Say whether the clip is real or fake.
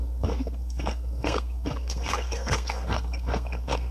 fake